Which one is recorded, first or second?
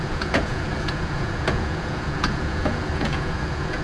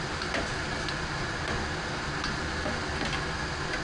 second